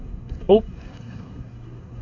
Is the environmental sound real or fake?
fake